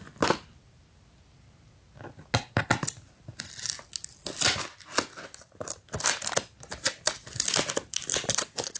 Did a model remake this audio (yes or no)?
no